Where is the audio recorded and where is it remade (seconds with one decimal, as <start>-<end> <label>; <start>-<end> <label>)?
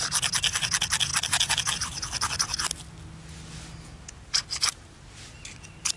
0.0-6.0 recorded